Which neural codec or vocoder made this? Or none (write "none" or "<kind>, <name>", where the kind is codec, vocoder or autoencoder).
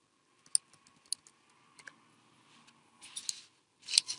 none